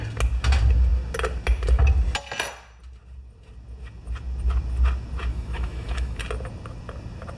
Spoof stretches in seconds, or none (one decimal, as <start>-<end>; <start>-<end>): 5.3-6.2